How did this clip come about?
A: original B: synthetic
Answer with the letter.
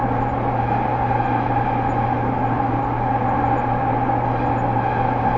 A